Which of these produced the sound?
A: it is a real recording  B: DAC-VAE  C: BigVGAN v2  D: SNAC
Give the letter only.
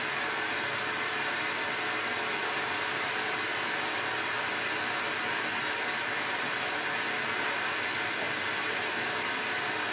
A